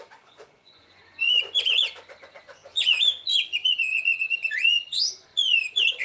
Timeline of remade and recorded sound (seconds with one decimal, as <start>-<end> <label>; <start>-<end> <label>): 0.0-6.0 remade